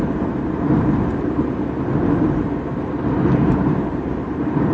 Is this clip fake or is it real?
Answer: fake